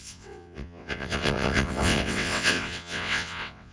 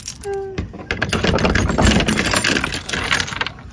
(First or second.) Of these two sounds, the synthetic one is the first